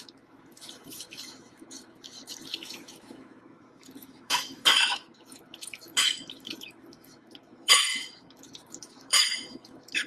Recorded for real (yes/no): no